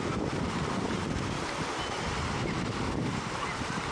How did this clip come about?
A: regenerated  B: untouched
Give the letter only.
B